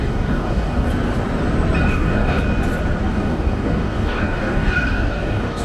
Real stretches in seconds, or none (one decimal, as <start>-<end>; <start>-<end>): 0.9-1.9; 2.4-3.1

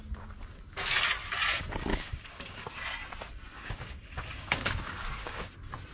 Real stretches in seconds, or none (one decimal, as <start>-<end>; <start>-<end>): 0.0-1.9; 2.8-3.5; 5.5-5.9

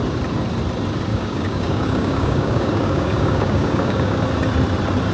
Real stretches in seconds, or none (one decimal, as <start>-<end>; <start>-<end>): 0.0-1.1; 4.2-5.1

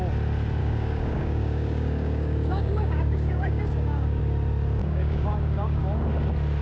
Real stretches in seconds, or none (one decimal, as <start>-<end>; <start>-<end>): 0.0-0.6; 4.2-4.8; 5.8-6.6

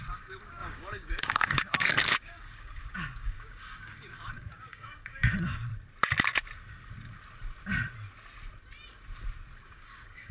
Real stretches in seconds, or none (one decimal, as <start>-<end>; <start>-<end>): 5.7-9.6

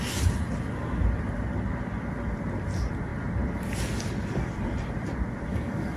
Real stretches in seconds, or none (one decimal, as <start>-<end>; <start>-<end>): 0.0-5.5

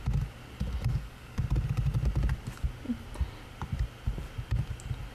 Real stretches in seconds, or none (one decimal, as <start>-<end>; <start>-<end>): 0.0-0.9; 1.4-5.1

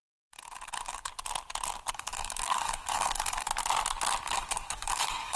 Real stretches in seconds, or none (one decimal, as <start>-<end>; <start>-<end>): 1.1-1.9; 3.5-4.2